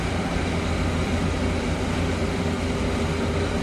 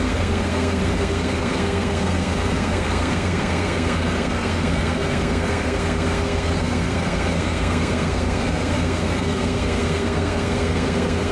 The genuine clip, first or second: first